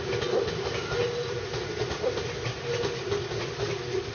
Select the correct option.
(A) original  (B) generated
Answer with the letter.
A